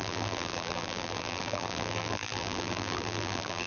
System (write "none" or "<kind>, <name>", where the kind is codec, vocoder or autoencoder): vocoder, BigVGAN v2